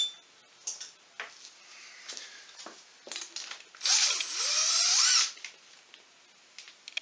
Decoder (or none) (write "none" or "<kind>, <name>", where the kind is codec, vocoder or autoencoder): none